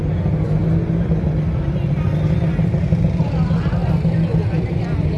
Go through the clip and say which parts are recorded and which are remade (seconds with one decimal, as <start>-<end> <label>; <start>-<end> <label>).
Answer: 0.0-5.2 recorded